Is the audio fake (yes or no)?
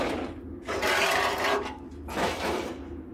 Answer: no